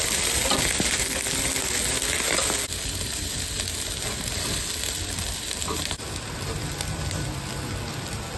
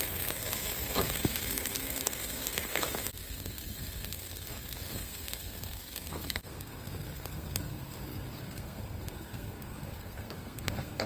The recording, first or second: first